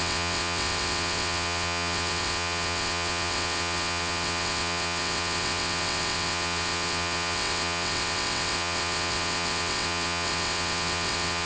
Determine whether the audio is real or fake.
fake